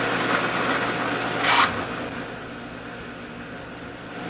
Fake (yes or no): no